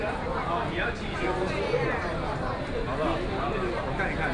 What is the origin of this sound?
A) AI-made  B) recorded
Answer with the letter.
B